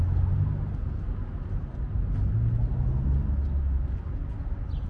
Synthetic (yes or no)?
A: no